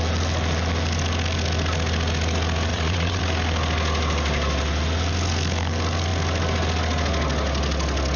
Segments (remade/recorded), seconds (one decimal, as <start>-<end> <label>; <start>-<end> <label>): 0.0-2.7 recorded; 2.7-3.2 remade; 3.2-8.2 recorded